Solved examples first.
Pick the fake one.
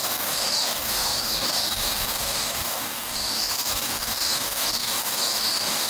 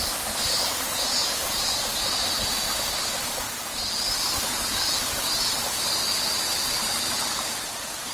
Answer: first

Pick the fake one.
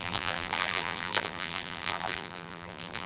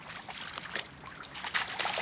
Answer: first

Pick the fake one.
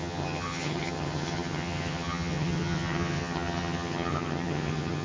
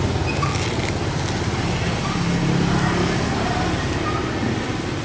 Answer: first